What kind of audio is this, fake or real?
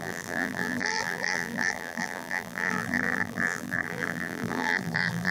fake